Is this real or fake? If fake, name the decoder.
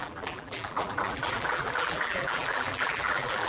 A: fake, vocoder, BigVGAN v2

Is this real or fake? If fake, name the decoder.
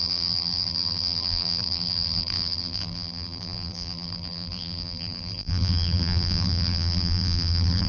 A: fake, vocoder, BigVGAN v2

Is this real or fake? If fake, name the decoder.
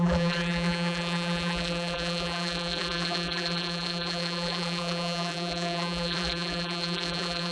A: fake, vocoder, BigVGAN v2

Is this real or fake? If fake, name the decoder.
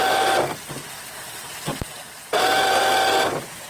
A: fake, vocoder, BigVGAN v2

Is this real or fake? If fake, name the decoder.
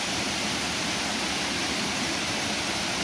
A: fake, vocoder, BigVGAN v2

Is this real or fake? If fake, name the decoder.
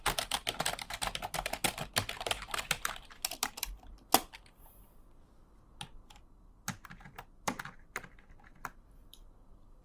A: fake, vocoder, BigVGAN v2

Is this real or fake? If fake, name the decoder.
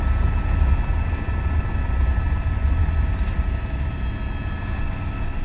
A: real